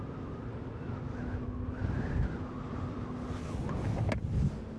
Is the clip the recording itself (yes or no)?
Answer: yes